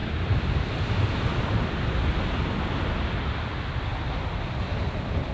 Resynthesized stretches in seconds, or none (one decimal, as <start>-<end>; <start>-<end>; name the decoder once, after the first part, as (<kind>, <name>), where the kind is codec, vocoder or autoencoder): none